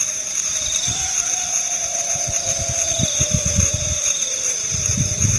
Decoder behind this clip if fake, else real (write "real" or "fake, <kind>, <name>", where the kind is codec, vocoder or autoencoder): fake, vocoder, BigVGAN v2